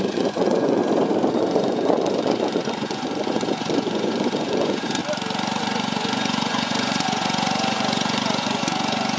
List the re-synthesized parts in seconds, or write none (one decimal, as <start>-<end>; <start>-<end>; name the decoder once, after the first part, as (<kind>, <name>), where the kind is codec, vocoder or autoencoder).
0.0-0.8 (vocoder, Vocos); 1.3-5.0; 5.6-9.2